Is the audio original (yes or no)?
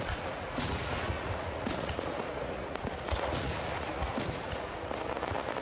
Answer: no